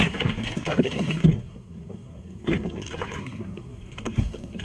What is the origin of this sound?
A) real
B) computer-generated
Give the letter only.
B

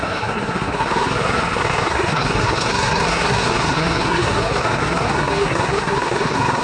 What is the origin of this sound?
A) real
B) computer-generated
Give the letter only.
B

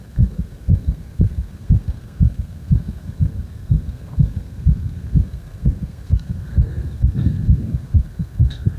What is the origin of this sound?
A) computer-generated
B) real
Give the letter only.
A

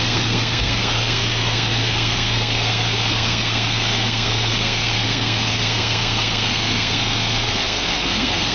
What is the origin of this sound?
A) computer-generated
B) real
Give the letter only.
A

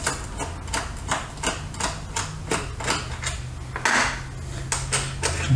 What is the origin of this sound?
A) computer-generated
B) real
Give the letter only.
B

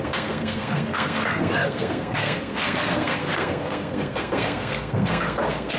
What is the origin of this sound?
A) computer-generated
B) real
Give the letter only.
A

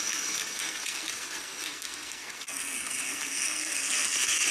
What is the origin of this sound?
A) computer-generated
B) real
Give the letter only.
A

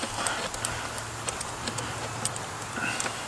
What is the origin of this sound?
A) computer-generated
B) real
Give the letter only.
B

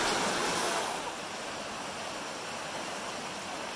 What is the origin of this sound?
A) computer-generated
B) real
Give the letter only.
B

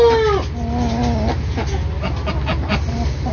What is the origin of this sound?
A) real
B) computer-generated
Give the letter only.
A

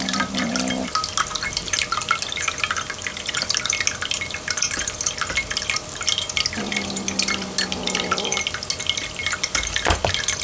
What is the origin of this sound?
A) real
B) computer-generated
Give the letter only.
A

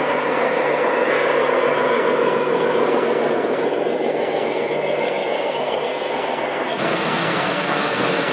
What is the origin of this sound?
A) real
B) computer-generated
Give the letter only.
B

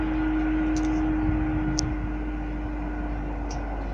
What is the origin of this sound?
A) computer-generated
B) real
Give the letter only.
B